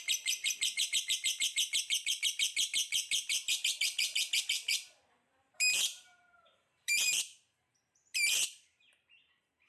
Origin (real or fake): fake